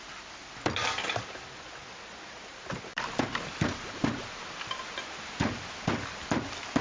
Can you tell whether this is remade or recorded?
recorded